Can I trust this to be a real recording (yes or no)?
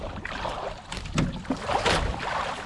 yes